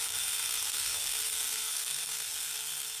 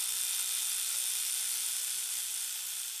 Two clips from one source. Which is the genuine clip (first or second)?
second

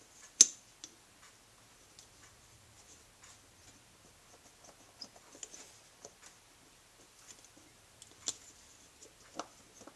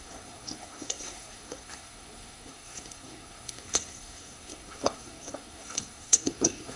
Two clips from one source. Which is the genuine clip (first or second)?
first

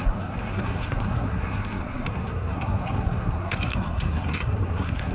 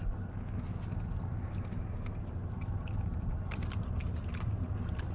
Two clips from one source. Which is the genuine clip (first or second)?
second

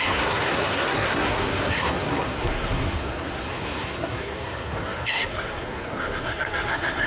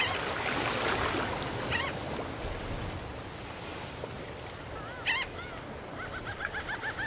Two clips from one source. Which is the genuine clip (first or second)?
second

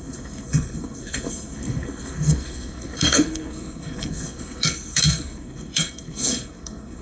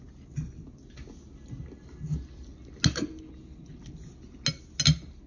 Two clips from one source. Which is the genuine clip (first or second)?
second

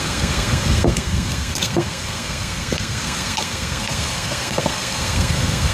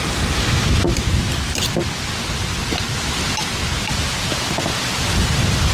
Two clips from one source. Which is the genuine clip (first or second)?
second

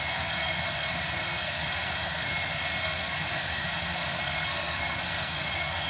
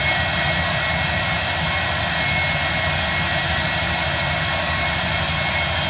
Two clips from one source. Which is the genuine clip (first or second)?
second